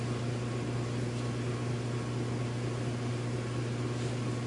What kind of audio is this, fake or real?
real